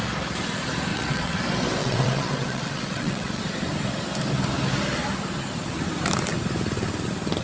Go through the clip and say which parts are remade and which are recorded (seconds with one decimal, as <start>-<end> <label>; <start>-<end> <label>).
0.0-0.9 recorded; 0.9-1.4 remade; 1.4-1.8 recorded; 1.8-3.4 remade; 3.4-7.4 recorded